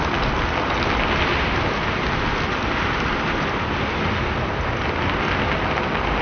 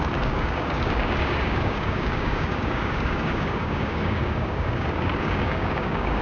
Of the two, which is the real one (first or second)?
first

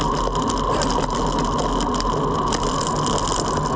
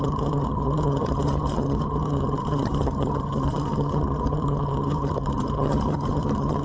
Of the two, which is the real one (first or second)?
first